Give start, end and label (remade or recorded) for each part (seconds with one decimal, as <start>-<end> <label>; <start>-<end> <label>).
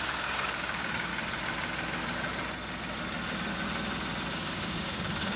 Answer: 0.0-1.1 remade; 1.1-4.3 recorded; 4.3-5.4 remade